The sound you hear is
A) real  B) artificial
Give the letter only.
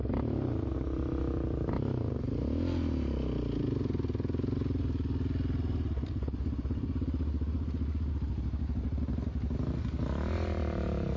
A